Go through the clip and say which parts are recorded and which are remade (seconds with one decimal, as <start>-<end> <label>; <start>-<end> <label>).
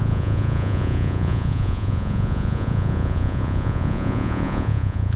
0.0-5.2 remade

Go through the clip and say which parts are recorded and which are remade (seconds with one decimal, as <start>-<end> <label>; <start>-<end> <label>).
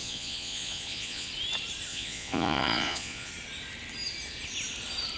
0.0-1.3 remade; 1.3-1.9 recorded; 1.9-3.3 remade; 3.3-5.2 recorded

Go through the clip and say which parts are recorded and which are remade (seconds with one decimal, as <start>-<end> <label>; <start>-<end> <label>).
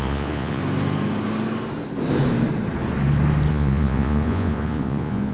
0.0-0.6 remade; 0.6-3.5 recorded; 3.5-5.3 remade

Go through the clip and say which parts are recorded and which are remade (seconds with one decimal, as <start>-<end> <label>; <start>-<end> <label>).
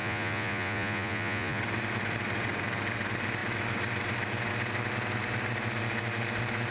0.0-1.6 remade; 1.6-6.7 recorded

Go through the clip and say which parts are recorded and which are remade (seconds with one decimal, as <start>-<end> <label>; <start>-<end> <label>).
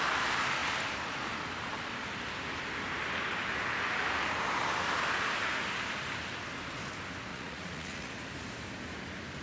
0.0-7.3 recorded; 7.3-8.1 remade; 8.1-9.4 recorded